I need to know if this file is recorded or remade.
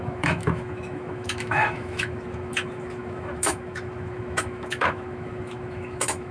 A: remade